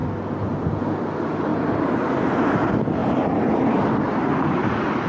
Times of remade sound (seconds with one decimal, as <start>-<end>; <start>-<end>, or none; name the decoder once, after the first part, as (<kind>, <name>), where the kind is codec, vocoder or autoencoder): 1.5-2.3 (vocoder, BigVGAN v2); 3.0-5.1